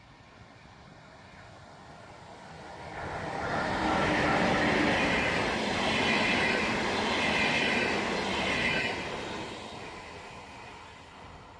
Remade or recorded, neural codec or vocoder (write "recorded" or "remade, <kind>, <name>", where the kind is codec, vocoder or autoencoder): recorded